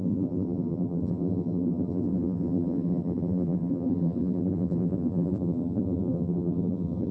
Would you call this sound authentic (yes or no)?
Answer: no